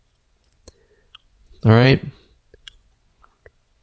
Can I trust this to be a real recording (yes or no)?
no